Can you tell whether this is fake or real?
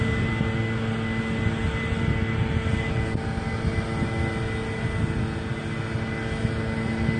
real